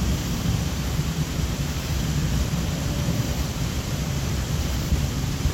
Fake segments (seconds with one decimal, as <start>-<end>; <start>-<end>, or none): 0.0-5.5